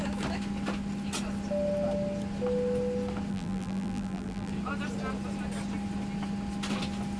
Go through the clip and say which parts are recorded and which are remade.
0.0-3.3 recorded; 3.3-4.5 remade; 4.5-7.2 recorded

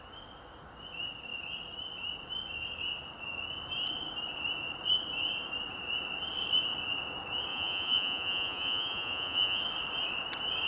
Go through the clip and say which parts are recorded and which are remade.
0.0-7.5 recorded; 7.5-9.6 remade; 9.6-10.7 recorded

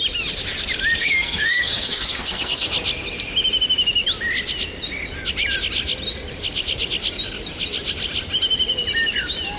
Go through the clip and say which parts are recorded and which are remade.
0.0-1.0 recorded; 1.0-2.7 remade; 2.7-9.6 recorded

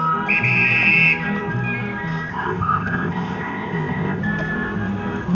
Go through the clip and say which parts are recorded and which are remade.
0.0-2.3 recorded; 2.3-4.2 remade; 4.2-5.3 recorded

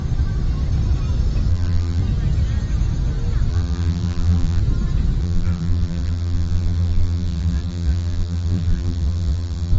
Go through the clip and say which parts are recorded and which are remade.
0.0-1.5 recorded; 1.5-2.0 remade; 2.0-3.5 recorded; 3.5-4.6 remade; 4.6-5.2 recorded; 5.2-9.8 remade

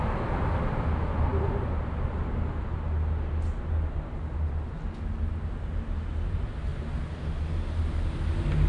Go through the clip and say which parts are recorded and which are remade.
0.0-8.7 recorded

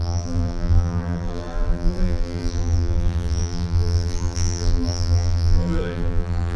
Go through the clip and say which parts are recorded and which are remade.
0.0-6.6 remade

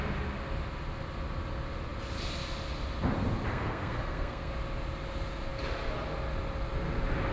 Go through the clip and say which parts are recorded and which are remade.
0.0-3.5 recorded; 3.5-4.5 remade; 4.5-7.3 recorded